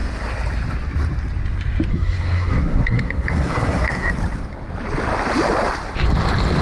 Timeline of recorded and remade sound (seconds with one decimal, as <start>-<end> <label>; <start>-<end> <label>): 0.0-1.9 recorded; 1.9-4.1 remade; 4.1-6.6 recorded